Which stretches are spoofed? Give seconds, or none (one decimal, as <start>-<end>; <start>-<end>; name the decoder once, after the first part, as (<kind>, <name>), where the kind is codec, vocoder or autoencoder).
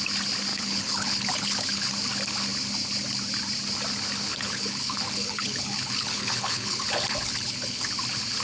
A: 0.5-1.9 (codec, HILCodec); 4.3-7.9